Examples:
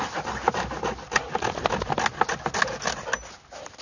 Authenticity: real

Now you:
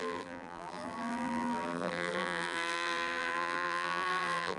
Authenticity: fake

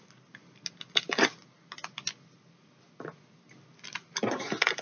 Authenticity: real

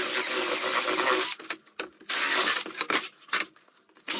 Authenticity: real